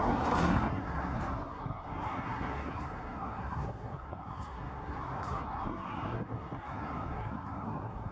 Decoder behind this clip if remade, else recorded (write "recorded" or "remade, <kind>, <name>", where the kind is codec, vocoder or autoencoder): remade, codec, SNAC